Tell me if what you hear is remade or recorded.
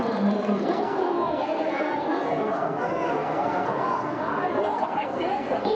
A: remade